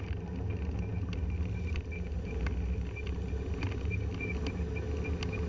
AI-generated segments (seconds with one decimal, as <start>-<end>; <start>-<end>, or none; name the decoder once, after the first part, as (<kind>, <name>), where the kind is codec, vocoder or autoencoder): none